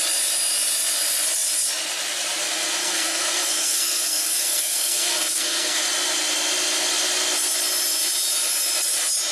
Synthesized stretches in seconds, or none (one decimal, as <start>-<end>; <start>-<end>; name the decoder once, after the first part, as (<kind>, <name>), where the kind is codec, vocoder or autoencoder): 2.8-5.8 (codec, SNAC)